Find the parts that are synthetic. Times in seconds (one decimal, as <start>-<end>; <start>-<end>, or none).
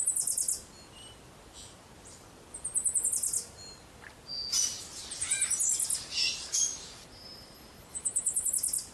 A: 7.9-8.5